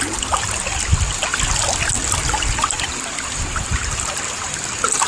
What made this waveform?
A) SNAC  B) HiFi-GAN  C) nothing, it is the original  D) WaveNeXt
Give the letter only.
C